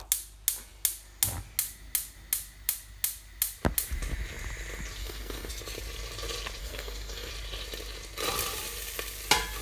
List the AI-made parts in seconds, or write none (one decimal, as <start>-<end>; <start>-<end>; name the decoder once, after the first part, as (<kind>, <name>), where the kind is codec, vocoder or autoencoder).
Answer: 5.0-5.5 (codec, SNAC); 6.6-7.3